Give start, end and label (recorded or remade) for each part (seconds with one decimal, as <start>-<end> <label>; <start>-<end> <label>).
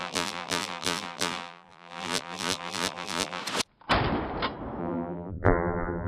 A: 0.0-3.4 remade; 3.4-4.8 recorded; 4.8-6.1 remade